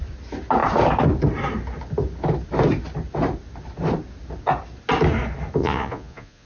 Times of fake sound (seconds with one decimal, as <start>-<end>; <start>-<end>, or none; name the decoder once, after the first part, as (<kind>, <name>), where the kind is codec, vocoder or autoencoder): 5.6-6.5 (vocoder, Vocos)